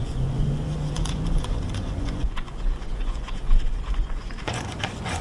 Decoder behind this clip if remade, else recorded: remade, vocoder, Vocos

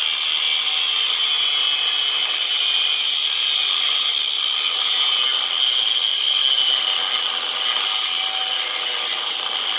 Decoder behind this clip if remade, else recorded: recorded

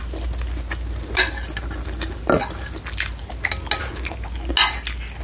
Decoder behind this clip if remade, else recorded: recorded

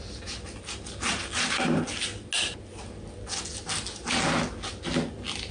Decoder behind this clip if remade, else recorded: recorded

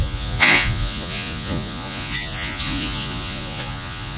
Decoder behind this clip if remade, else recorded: remade, vocoder, Vocos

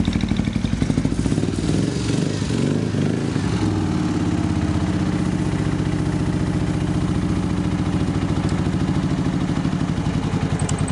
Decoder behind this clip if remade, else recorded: recorded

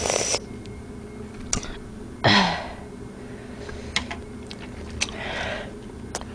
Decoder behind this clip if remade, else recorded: recorded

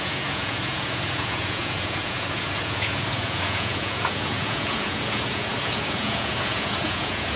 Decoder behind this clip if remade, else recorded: remade, vocoder, Vocos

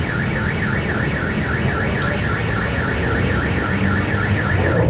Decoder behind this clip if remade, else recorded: recorded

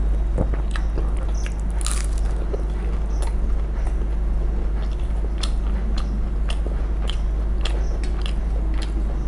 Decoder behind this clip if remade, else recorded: recorded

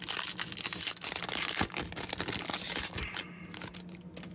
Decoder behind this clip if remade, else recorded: recorded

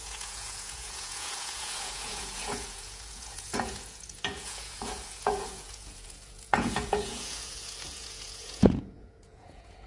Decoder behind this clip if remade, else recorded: remade, vocoder, Vocos